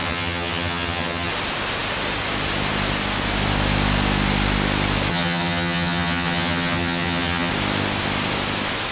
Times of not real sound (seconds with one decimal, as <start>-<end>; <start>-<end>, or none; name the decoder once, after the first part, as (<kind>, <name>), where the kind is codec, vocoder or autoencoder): 0.0-1.3 (vocoder, HiFi-GAN); 5.1-7.5

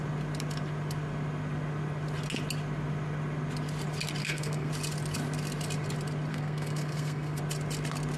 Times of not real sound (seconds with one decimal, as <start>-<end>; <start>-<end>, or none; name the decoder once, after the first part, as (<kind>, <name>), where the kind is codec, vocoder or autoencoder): 4.2-4.7 (codec, SNAC); 6.3-7.4

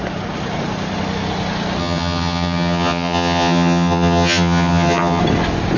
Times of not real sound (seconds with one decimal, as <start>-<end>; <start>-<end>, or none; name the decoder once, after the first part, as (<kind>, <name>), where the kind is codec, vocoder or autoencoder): 1.8-5.2 (vocoder, HiFi-GAN)

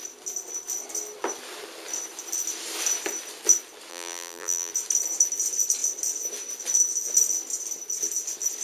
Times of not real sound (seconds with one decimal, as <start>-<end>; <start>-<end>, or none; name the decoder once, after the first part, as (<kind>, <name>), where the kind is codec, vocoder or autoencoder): 3.9-4.7 (vocoder, BigVGAN v2)

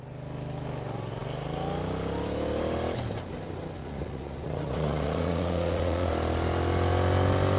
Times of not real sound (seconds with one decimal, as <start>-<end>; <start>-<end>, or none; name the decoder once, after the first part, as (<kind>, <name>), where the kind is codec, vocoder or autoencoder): 3.8-6.1 (vocoder, Vocos)